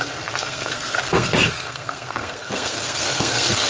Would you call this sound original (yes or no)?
no